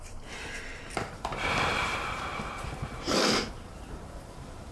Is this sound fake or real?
fake